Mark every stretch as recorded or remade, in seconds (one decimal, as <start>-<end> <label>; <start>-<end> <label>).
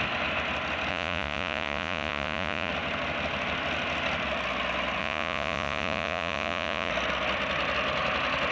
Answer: 0.0-0.9 recorded; 0.9-2.7 remade; 2.7-5.0 recorded; 5.0-6.9 remade; 6.9-8.5 recorded